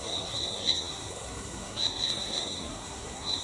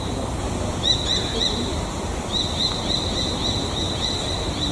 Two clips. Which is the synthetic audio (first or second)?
first